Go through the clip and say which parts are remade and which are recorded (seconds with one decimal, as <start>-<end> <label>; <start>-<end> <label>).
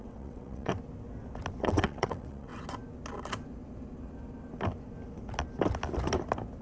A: 0.0-0.7 remade; 0.7-1.6 recorded; 1.6-2.5 remade; 2.5-6.6 recorded